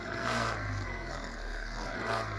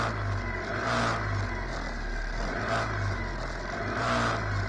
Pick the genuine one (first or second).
second